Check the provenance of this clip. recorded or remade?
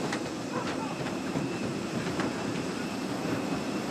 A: remade